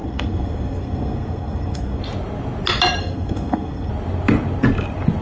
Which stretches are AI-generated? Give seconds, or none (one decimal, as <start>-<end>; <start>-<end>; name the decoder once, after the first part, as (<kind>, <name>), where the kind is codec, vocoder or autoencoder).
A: 0.0-2.0 (codec, SNAC); 3.0-3.9